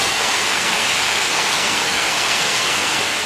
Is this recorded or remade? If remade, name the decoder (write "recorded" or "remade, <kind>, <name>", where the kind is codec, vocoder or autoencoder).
remade, codec, SNAC